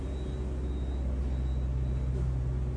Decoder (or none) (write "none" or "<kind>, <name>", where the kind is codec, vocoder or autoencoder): none